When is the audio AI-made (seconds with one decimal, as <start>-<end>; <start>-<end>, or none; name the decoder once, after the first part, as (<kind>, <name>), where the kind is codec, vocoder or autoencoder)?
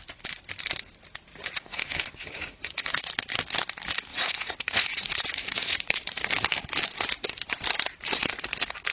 1.3-3.1 (vocoder, Vocos); 4.1-6.3